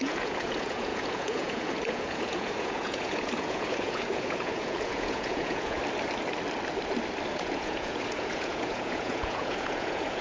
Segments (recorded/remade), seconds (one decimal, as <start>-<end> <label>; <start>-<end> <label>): 0.0-5.8 remade; 5.8-7.3 recorded; 7.3-10.2 remade